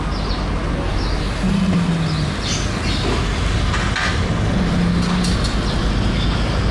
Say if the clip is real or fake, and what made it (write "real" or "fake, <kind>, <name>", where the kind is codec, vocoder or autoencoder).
real